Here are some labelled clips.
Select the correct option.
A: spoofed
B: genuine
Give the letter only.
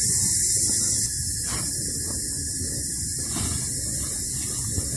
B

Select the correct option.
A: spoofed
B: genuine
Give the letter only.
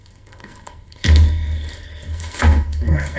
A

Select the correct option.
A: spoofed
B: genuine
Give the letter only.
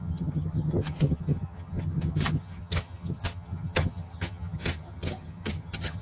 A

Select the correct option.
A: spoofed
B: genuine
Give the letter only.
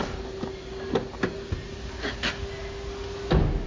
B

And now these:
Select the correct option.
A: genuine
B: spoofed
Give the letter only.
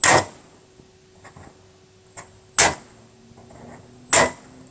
A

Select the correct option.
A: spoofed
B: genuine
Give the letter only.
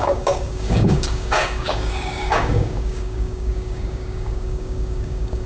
A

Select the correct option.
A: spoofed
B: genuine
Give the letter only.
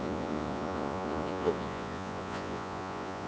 A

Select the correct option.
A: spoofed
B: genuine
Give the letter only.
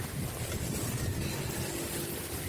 B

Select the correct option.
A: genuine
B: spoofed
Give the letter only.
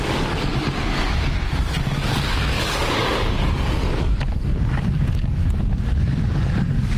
B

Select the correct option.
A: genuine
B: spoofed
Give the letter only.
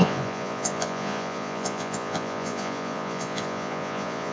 B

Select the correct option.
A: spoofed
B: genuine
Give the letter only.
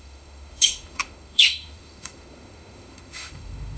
A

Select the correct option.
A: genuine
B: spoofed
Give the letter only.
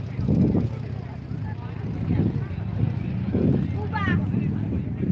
A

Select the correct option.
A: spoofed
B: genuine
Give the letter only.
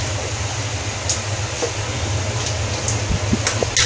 B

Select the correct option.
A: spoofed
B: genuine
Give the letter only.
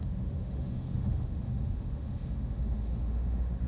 A